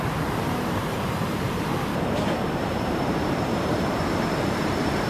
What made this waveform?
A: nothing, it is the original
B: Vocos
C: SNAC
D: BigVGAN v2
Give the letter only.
D